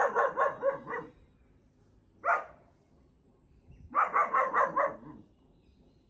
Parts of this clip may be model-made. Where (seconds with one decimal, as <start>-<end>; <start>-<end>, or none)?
none